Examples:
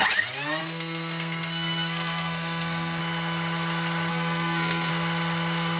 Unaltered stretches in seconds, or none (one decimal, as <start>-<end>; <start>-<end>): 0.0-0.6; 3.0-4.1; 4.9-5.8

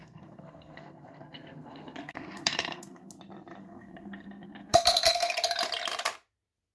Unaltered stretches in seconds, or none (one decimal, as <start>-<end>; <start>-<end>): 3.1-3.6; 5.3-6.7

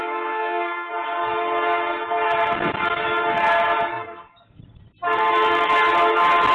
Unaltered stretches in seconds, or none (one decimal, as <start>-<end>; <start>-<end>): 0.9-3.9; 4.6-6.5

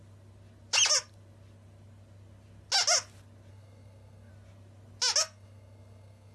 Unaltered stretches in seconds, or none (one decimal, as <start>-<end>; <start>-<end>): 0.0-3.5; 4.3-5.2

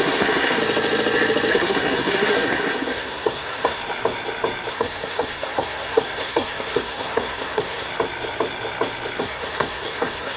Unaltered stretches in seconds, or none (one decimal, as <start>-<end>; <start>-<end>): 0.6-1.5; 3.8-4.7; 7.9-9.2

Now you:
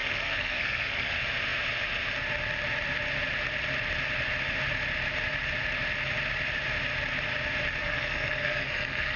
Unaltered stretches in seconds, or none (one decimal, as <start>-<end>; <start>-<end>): 1.1-7.8

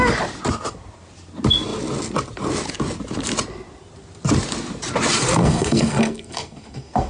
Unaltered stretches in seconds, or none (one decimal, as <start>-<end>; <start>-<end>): 0.0-5.4